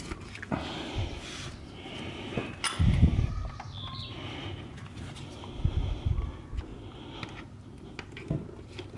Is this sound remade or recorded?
recorded